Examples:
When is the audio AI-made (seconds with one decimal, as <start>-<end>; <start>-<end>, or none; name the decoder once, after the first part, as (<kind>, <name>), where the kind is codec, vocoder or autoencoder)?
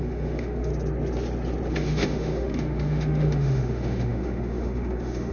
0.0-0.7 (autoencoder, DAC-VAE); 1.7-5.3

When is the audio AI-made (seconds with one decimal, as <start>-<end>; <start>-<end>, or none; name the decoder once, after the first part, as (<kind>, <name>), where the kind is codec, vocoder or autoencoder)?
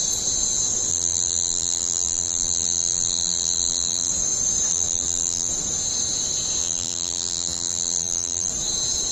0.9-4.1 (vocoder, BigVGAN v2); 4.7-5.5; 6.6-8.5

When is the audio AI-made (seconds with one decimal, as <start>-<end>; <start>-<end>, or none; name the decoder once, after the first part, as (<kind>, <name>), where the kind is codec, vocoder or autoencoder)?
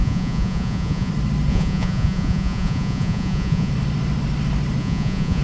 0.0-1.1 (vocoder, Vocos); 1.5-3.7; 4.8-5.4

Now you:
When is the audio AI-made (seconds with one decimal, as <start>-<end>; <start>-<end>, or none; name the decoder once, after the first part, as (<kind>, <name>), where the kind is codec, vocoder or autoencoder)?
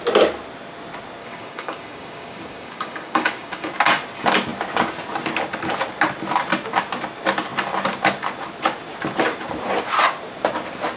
1.2-3.7 (codec, DAC)